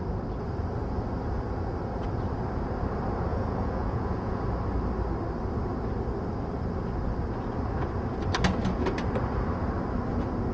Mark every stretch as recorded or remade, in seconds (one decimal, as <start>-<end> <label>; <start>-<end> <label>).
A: 0.0-3.3 recorded; 3.3-4.4 remade; 4.4-10.5 recorded